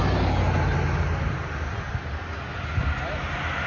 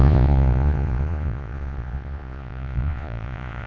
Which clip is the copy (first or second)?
second